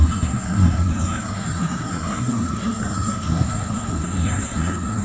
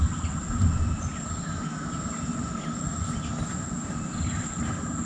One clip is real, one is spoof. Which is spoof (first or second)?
first